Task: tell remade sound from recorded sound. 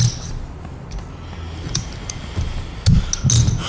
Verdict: recorded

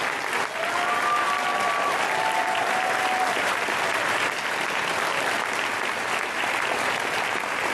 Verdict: recorded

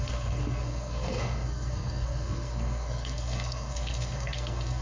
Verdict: remade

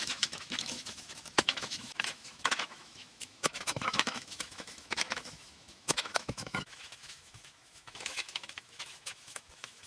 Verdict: remade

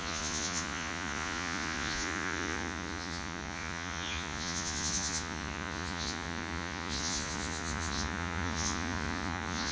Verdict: remade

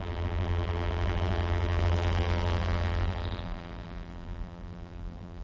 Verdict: remade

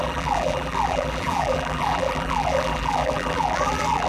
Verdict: remade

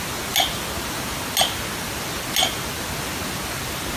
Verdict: recorded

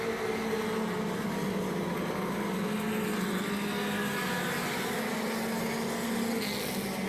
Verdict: recorded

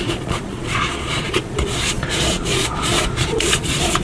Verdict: remade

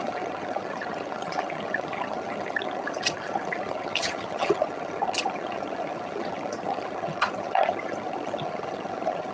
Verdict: remade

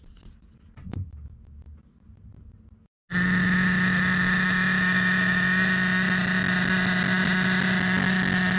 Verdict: recorded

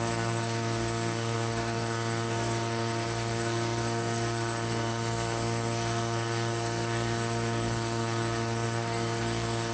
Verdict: remade